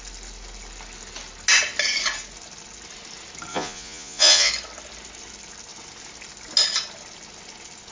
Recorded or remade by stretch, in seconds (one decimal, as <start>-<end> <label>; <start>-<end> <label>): 0.0-3.5 recorded; 3.5-4.5 remade; 4.5-7.9 recorded